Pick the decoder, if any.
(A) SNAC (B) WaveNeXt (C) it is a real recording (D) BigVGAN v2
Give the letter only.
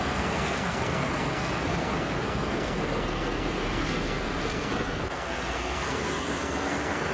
A